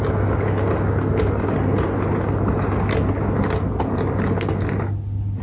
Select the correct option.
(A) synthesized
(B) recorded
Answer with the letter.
B